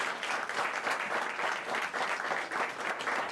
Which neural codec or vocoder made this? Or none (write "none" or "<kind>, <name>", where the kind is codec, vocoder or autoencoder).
none